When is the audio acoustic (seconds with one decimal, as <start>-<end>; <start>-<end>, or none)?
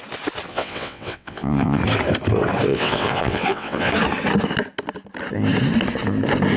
0.0-0.5; 1.8-2.7; 3.9-6.6